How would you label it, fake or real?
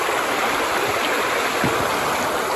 real